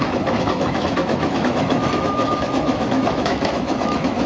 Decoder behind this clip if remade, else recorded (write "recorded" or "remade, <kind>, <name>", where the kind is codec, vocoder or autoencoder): remade, autoencoder, DAC-VAE